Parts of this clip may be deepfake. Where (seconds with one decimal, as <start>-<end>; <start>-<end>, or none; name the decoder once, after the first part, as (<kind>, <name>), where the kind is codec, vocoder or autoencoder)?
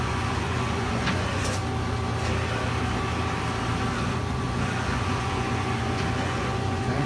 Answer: 0.0-1.6 (vocoder, Vocos); 4.0-7.1